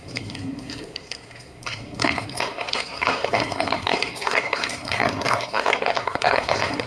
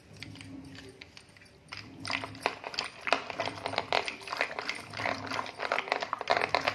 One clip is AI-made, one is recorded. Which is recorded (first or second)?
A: second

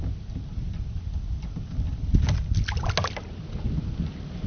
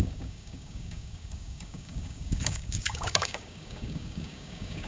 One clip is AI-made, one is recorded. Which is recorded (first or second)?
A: first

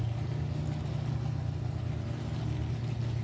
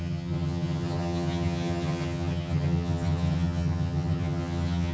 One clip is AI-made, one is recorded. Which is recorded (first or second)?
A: first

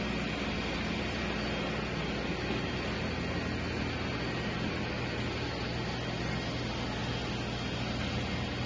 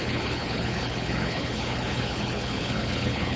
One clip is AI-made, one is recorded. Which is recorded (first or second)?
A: first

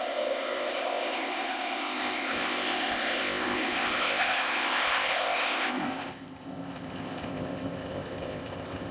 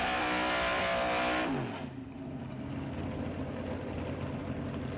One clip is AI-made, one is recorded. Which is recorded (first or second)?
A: second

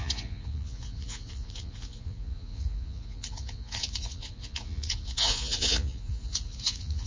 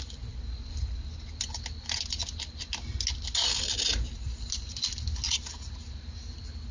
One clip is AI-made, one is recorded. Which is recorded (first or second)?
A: second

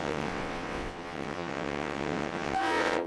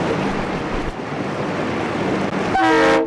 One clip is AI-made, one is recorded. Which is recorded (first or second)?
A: second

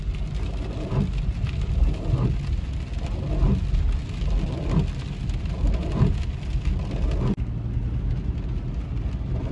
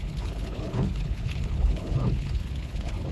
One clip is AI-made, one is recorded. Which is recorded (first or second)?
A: first